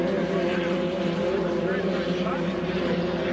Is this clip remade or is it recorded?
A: recorded